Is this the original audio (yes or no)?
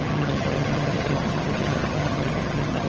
no